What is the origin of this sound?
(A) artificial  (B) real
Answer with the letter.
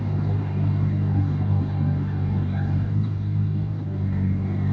A